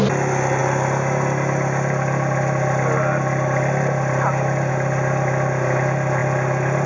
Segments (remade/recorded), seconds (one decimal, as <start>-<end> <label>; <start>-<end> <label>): 0.0-6.9 recorded